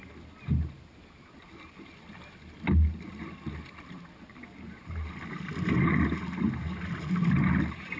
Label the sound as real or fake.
real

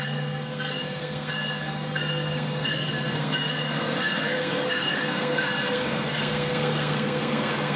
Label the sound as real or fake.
fake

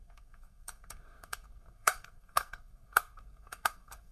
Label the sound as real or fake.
fake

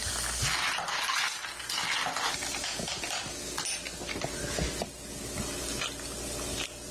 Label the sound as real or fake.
real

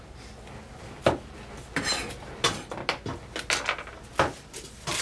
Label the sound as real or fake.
real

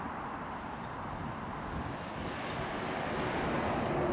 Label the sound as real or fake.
real